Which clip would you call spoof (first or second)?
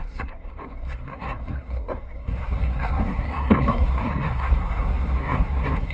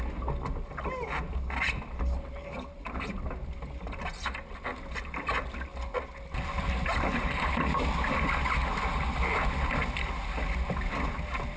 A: first